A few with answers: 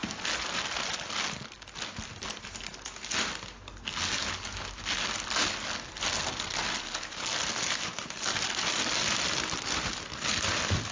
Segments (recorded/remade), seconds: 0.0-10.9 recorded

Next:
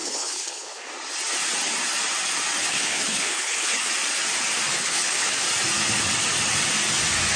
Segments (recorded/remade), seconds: 0.0-0.9 remade; 0.9-2.6 recorded; 2.6-3.9 remade; 3.9-4.7 recorded; 4.7-5.4 remade; 5.4-7.4 recorded

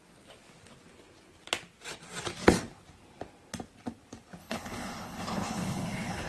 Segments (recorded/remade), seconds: 0.0-4.4 recorded; 4.4-6.3 remade

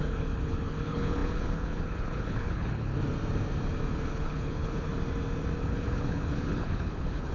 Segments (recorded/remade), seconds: 0.0-2.9 remade; 2.9-3.9 recorded; 3.9-4.9 remade; 4.9-5.6 recorded; 5.6-7.3 remade

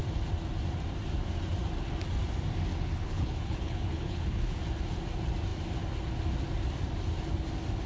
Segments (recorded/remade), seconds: 0.0-2.7 recorded; 2.7-4.6 remade; 4.6-7.9 recorded

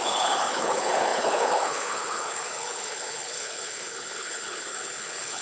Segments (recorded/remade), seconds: 0.0-5.4 remade

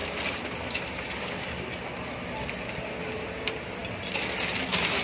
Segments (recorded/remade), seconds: 0.0-5.0 recorded